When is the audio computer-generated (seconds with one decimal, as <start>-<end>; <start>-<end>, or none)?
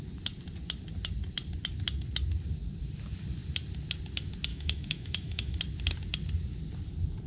4.5-5.6